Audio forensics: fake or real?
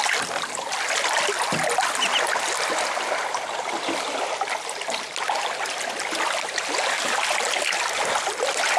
real